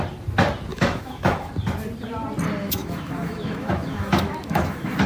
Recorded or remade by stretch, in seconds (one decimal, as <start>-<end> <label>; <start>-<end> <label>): 0.0-0.7 recorded; 0.7-1.5 remade; 1.5-2.6 recorded; 2.6-5.1 remade